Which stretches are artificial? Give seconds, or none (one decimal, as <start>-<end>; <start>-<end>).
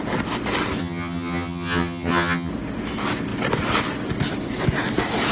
0.8-2.5